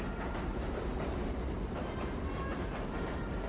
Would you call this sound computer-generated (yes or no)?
no